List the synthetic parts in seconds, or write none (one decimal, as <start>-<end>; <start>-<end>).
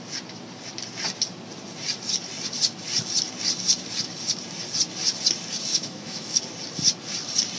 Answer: 5.7-6.4